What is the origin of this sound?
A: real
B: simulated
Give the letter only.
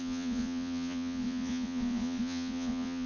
B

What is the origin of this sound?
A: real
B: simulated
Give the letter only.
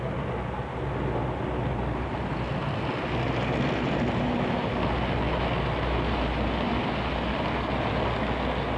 A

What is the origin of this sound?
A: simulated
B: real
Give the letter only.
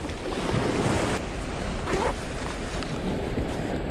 A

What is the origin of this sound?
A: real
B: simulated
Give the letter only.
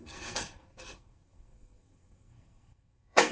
B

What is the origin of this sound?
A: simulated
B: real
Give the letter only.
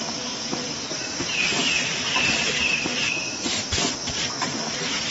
B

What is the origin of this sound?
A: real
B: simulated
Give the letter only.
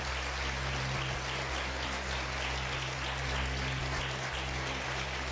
A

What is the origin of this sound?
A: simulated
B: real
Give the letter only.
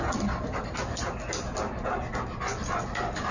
B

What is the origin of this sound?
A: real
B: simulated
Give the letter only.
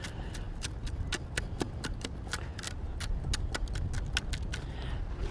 A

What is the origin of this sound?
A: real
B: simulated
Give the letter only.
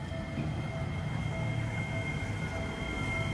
A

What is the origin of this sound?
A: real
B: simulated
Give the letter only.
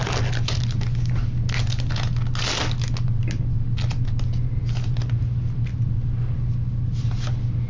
A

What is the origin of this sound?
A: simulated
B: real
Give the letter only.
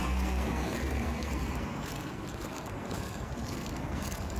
A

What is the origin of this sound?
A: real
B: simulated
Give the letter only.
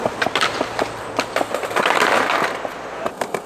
A